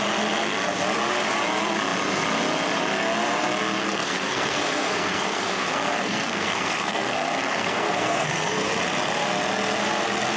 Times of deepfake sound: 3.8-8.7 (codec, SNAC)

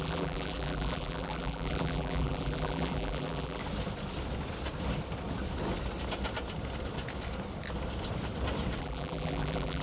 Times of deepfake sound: 0.0-3.6 (vocoder, BigVGAN v2); 8.8-9.8

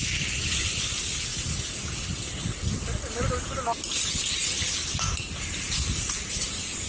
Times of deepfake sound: none

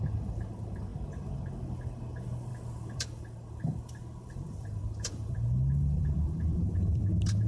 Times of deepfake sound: 2.5-7.0 (vocoder, BigVGAN v2)

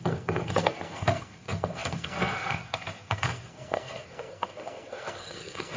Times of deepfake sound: 0.0-5.8 (codec, SNAC)

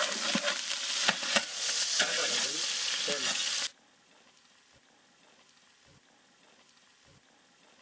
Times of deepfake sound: 1.0-2.7 (vocoder, Vocos)